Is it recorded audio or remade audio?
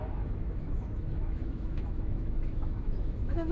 remade